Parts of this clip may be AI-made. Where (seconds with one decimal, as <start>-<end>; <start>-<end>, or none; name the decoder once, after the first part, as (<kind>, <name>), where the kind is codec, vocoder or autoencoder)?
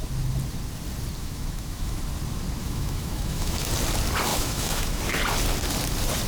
1.2-2.0 (autoencoder, DAC-VAE); 2.6-3.7; 4.3-5.0